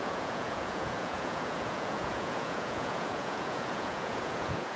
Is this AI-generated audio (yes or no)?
yes